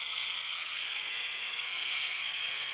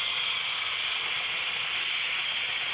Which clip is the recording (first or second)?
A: second